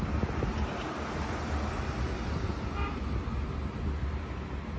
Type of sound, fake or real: real